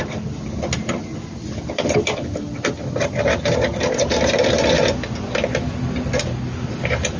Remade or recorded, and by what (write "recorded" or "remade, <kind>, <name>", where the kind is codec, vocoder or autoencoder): recorded